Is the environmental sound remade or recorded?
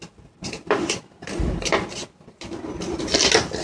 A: recorded